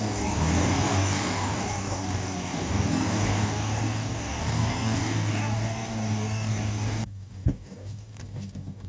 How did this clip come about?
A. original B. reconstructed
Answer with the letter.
B